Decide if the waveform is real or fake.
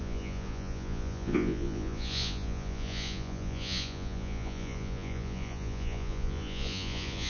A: fake